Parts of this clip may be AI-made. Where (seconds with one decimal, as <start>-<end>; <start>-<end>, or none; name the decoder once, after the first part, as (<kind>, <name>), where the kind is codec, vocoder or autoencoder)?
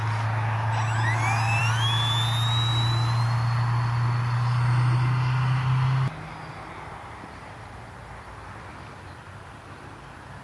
none